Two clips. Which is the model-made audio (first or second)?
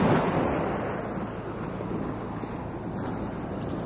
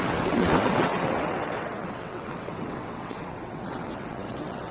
second